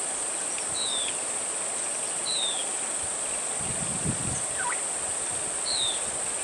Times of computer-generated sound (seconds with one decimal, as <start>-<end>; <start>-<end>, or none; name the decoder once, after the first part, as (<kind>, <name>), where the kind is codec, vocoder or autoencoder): none